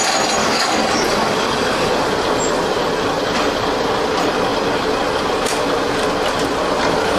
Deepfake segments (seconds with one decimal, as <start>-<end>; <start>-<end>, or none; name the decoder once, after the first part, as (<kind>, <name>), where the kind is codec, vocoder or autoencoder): 0.4-1.9 (codec, DAC)